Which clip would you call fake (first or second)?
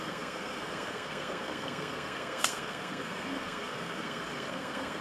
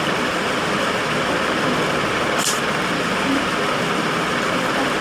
first